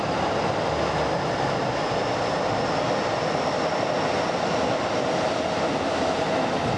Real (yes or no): yes